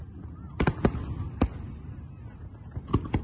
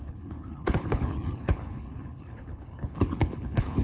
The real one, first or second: first